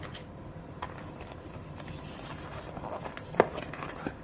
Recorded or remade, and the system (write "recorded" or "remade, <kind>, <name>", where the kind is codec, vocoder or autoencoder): remade, vocoder, BigVGAN v2